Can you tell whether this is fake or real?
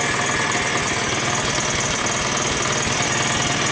real